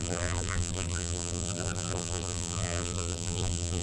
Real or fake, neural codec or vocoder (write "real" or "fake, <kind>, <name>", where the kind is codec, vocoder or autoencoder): fake, vocoder, BigVGAN v2